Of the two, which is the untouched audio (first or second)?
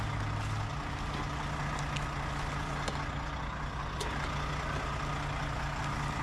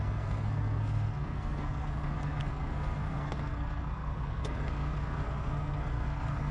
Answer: first